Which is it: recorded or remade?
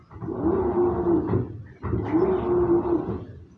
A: recorded